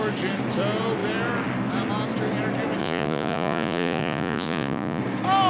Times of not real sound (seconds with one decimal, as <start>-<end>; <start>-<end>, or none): 2.8-5.0